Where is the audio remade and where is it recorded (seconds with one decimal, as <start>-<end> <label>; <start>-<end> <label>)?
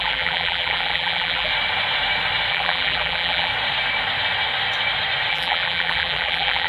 0.0-1.5 remade; 1.5-2.5 recorded; 2.5-3.5 remade; 3.5-5.3 recorded; 5.3-6.7 remade